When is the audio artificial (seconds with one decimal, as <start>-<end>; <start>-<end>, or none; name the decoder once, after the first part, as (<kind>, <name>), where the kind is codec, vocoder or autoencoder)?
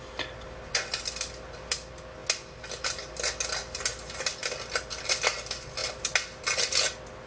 none